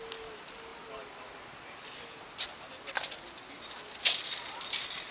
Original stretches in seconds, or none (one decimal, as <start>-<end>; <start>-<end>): 0.0-5.1